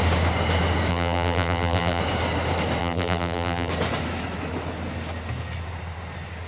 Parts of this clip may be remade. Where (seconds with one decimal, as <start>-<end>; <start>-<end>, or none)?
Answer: 0.9-2.0; 2.8-3.7